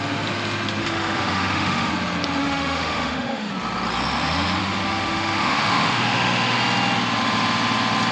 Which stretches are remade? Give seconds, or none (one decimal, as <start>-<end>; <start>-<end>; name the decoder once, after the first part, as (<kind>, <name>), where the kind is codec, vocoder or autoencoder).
0.8-1.9 (autoencoder, DAC-VAE); 2.4-3.5; 4.6-6.6